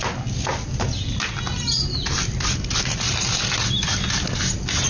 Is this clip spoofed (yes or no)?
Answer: no